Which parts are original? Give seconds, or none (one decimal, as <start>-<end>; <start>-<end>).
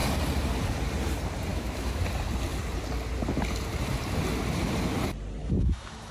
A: 0.0-1.5; 2.0-5.4